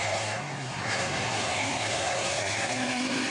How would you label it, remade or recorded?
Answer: remade